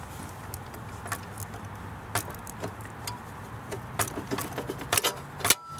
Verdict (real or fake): real